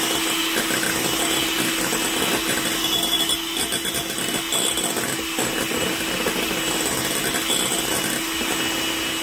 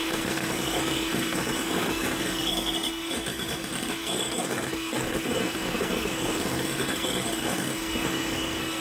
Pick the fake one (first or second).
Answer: second